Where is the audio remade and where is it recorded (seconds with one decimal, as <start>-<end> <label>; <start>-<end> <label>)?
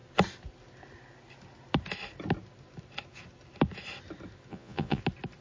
0.0-4.5 recorded; 4.5-5.0 remade; 5.0-5.4 recorded